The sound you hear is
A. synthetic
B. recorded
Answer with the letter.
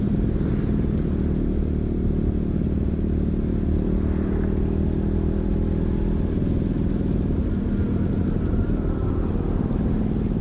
B